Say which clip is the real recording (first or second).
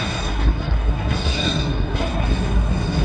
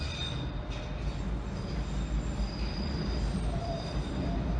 second